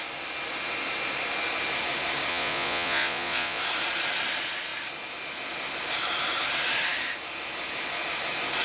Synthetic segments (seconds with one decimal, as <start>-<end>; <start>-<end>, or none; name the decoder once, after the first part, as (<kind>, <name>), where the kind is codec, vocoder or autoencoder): 2.3-3.6 (vocoder, Vocos)